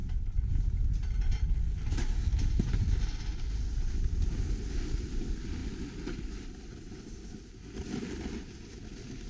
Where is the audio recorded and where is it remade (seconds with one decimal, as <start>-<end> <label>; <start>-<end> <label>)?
0.0-9.3 recorded